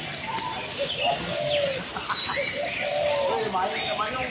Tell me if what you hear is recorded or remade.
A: recorded